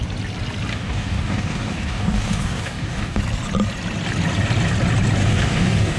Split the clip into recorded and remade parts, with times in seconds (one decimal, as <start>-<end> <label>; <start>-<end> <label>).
0.0-0.7 recorded; 0.7-3.2 remade; 3.2-5.2 recorded; 5.2-6.0 remade